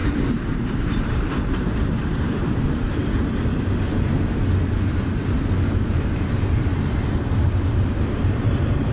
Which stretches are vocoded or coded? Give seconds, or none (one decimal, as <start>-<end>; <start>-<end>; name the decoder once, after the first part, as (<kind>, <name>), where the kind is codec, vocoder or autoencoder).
0.0-3.0 (vocoder, BigVGAN v2); 5.9-6.7; 7.5-8.9

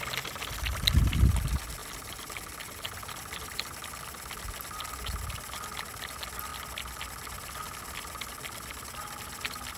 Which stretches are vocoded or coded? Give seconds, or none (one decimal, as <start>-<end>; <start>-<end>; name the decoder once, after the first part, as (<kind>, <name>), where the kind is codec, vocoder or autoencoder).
none

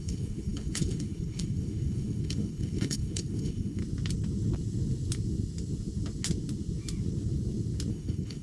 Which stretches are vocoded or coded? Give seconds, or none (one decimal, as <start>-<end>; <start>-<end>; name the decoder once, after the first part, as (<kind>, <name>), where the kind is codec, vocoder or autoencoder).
0.0-3.8 (codec, HILCodec); 7.9-8.4

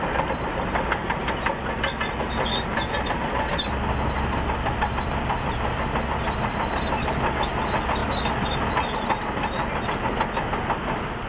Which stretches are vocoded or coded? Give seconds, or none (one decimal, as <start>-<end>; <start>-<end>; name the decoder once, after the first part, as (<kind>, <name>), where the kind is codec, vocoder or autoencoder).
none

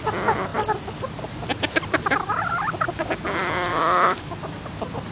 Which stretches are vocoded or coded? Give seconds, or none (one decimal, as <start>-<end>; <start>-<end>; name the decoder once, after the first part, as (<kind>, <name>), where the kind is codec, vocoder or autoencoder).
3.7-4.3 (autoencoder, DAC-VAE)

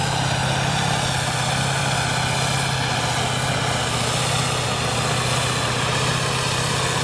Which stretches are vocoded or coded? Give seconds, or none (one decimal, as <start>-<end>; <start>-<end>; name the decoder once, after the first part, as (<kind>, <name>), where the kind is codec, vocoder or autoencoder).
none